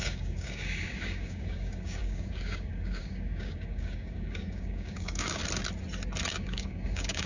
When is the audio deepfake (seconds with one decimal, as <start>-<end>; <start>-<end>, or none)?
0.0-5.4; 6.3-7.3